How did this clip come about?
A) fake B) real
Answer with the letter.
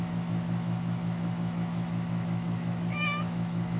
A